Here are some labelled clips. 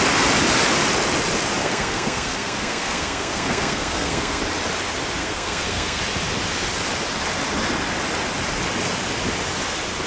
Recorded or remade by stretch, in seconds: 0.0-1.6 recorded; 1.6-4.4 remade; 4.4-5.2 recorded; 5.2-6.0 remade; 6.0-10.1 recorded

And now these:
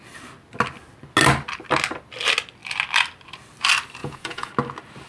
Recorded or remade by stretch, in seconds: 0.0-4.0 recorded; 4.0-4.5 remade; 4.5-5.1 recorded